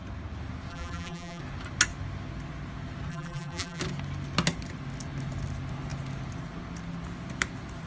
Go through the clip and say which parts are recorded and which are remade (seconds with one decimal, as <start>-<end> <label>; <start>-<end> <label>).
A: 0.0-0.7 recorded; 0.7-1.4 remade; 1.4-3.1 recorded; 3.1-3.8 remade; 3.8-7.9 recorded